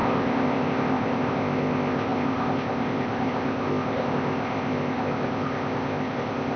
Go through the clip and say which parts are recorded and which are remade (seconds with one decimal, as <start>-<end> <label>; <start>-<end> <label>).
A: 0.0-6.6 remade